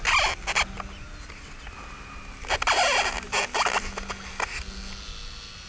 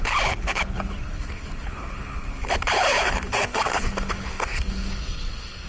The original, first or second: first